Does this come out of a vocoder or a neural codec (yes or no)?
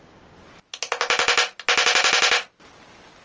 no